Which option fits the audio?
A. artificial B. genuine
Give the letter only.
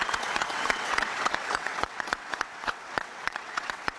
A